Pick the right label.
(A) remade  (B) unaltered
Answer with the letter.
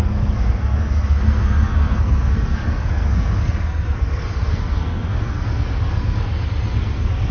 A